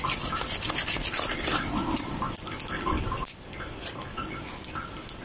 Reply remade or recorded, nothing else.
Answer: recorded